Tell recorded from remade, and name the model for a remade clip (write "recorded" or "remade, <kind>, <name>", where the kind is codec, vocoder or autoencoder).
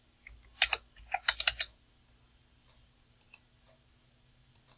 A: recorded